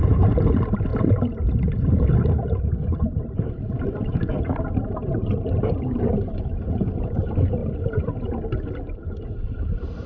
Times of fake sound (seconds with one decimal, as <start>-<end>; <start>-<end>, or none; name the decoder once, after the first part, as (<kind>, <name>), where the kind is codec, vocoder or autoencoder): 0.0-7.6 (vocoder, BigVGAN v2); 8.7-10.1